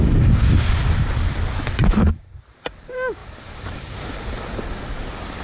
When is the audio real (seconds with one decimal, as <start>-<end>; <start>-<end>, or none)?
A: 0.0-3.2; 4.1-5.4